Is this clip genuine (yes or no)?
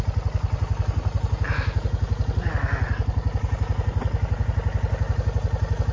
yes